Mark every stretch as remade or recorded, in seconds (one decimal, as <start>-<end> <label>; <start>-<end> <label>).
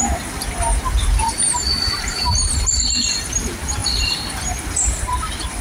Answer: 0.0-5.6 remade